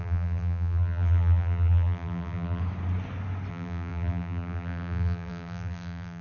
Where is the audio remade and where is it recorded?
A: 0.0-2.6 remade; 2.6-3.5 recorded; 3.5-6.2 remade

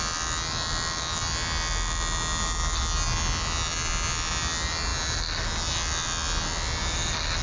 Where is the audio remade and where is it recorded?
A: 0.0-7.4 recorded